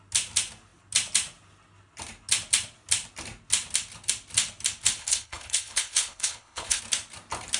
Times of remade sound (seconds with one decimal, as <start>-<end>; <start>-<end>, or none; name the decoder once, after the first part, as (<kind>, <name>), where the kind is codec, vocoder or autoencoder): 5.0-6.8 (codec, HILCodec)